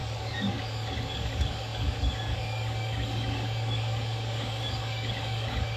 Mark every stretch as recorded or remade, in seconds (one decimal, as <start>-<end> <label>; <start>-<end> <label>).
0.0-5.8 remade